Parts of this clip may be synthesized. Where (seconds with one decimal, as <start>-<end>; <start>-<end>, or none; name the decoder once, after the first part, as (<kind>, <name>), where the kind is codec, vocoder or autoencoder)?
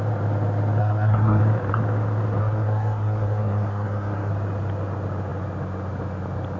0.8-1.4 (codec, SNAC); 2.4-4.3